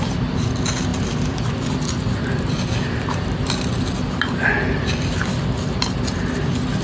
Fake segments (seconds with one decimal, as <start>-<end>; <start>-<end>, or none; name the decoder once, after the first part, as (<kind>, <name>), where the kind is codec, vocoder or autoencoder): none